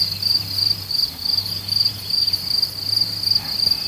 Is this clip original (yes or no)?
yes